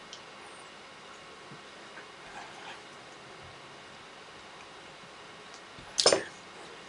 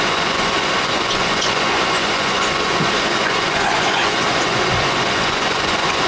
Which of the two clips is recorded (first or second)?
first